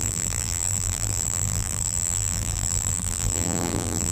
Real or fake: fake